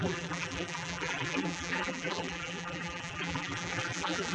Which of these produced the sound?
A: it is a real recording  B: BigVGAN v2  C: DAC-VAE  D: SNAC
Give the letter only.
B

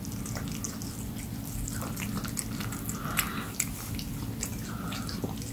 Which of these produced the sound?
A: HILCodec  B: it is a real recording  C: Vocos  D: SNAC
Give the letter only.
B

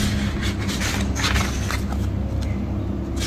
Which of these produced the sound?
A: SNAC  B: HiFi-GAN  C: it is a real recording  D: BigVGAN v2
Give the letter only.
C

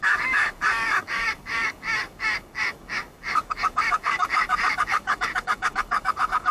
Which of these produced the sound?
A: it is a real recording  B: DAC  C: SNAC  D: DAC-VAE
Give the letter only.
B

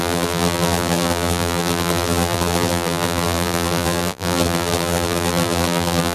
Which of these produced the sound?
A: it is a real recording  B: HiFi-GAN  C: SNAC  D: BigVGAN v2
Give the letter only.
D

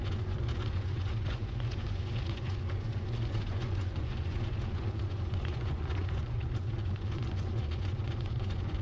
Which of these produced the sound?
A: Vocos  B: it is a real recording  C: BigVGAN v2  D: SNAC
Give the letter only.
A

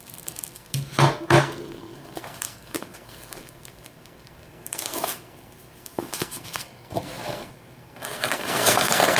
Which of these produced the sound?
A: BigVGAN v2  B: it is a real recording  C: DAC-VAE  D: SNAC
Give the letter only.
D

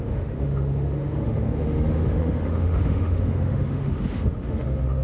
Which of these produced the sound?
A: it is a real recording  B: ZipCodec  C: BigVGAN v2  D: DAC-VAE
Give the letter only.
D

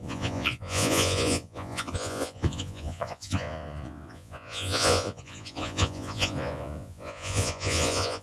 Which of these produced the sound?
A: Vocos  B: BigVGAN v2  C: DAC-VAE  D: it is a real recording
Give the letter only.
A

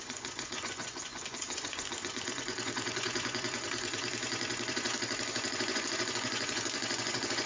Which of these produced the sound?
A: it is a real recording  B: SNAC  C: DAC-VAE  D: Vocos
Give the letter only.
D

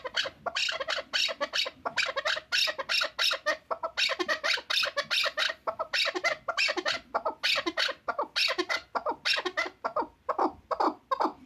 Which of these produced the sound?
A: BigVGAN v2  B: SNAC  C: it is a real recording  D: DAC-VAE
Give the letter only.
C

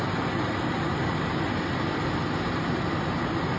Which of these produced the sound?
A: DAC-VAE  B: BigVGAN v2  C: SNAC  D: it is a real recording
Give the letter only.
D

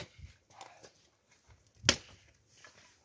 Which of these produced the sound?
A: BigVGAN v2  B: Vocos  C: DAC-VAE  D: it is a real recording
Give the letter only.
D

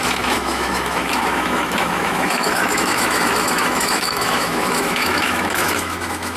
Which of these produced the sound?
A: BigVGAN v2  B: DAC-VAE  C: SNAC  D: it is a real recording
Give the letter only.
B